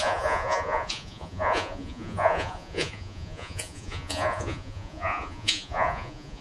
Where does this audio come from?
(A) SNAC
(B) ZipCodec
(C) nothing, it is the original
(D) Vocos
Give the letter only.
D